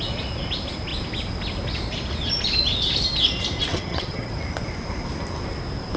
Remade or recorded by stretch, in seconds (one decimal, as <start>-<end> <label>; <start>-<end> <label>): 0.0-3.7 recorded; 3.7-4.3 remade; 4.3-6.0 recorded